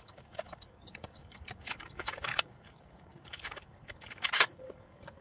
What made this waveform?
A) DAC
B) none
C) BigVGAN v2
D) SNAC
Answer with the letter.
A